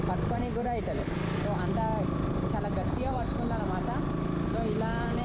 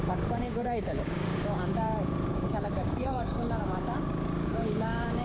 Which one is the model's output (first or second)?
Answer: second